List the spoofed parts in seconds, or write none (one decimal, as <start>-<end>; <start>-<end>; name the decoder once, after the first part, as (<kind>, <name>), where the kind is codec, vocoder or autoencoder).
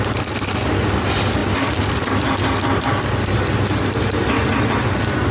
none